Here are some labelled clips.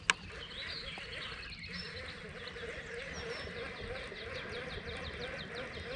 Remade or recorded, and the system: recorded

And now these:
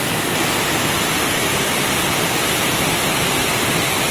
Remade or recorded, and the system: recorded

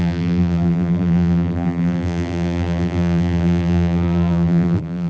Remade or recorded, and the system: remade, vocoder, BigVGAN v2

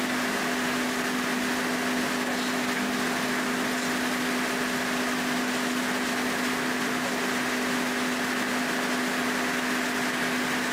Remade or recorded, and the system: recorded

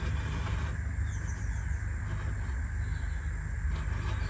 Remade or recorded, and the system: recorded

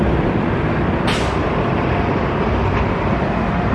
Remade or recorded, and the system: recorded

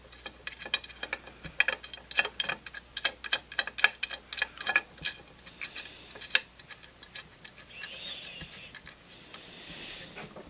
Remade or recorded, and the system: recorded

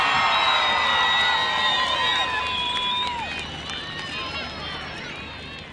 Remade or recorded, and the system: recorded